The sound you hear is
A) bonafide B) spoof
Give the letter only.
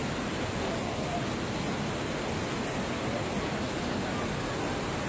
A